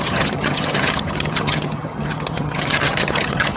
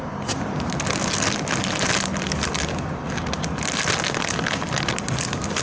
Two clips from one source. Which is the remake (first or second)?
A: first